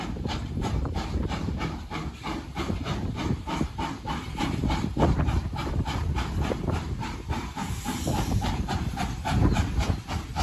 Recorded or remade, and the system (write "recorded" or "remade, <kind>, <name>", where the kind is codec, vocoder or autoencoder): remade, vocoder, BigVGAN v2